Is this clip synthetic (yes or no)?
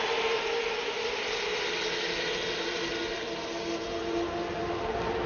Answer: no